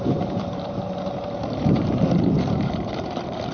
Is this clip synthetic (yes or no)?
yes